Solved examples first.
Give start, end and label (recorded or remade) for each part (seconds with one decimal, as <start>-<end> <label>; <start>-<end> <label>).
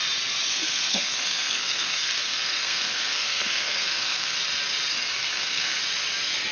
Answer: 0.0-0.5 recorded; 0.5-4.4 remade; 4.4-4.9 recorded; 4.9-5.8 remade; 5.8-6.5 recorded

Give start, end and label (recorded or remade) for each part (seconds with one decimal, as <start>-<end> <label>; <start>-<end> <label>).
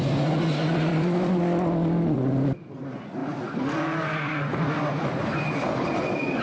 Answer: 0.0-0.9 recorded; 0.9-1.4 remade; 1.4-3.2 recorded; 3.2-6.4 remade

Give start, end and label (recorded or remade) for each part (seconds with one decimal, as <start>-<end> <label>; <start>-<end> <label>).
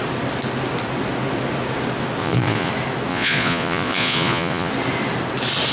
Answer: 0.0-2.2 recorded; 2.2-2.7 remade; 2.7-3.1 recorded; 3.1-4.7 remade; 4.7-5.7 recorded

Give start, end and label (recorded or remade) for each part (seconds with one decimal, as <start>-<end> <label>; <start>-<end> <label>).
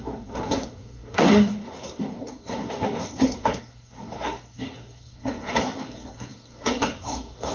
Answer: 0.0-7.5 remade